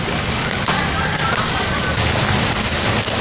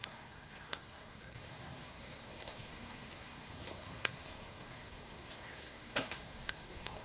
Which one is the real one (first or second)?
first